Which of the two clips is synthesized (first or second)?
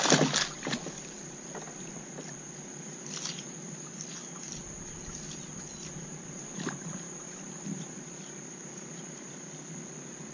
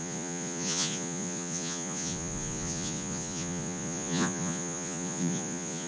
second